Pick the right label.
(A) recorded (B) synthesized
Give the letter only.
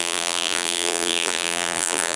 B